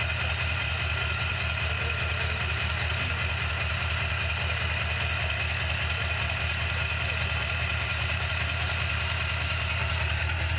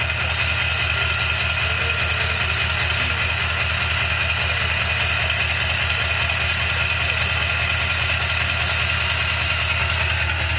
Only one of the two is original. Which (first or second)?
second